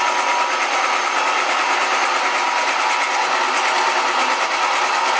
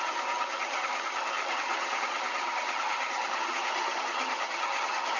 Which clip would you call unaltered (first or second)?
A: first